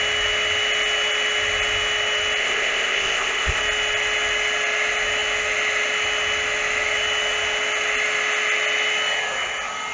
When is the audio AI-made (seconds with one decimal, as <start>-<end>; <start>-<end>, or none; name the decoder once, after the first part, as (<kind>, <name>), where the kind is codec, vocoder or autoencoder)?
2.4-3.6 (codec, ZipCodec)